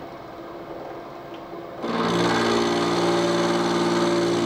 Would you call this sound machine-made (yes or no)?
no